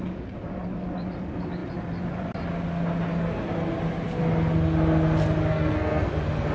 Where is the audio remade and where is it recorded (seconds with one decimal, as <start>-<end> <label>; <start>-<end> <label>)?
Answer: 0.0-5.5 recorded; 5.5-6.1 remade; 6.1-6.5 recorded